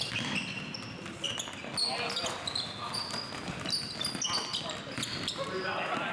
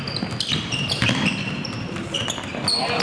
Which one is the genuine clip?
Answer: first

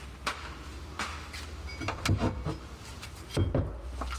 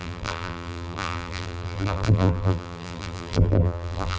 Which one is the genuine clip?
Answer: first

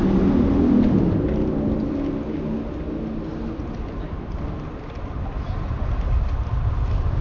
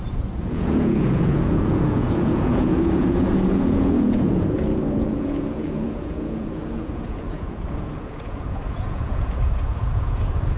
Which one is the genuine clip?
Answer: first